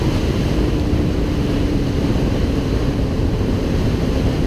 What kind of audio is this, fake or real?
fake